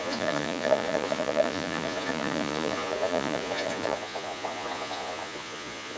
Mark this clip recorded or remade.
remade